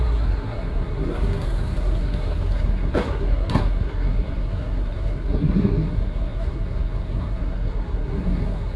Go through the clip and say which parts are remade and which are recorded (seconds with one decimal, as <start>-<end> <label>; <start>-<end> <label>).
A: 0.0-8.8 remade